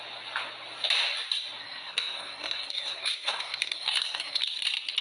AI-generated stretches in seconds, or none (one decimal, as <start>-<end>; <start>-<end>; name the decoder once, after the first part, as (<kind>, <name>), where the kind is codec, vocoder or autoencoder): 1.6-4.4 (codec, SNAC)